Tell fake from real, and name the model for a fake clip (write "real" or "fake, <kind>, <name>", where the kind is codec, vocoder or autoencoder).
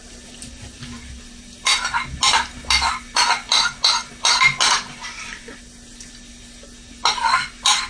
real